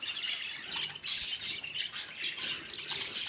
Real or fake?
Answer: fake